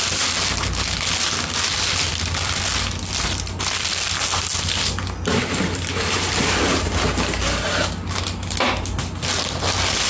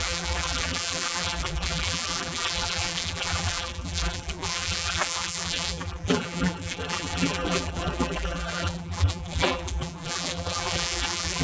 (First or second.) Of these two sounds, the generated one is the second